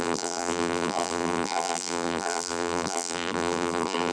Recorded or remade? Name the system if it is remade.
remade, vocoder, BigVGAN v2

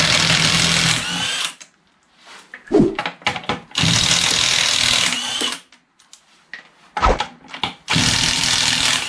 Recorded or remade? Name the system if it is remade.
recorded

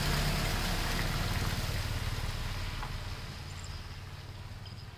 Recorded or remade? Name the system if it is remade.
recorded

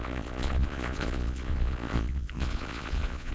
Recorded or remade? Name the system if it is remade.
remade, vocoder, Vocos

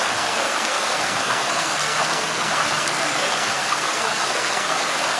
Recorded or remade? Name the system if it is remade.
remade, codec, SNAC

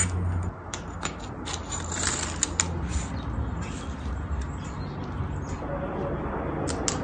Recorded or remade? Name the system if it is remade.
recorded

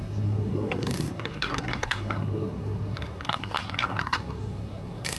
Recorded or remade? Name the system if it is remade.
remade, codec, SNAC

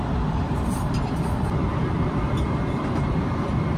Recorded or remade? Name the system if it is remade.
remade, vocoder, BigVGAN v2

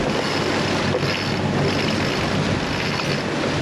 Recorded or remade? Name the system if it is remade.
recorded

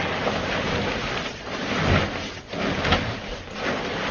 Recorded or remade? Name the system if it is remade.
recorded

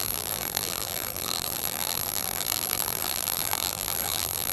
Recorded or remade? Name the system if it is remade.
remade, vocoder, BigVGAN v2